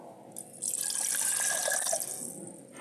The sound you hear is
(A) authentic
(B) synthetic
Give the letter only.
A